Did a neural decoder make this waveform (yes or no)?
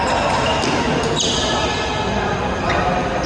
no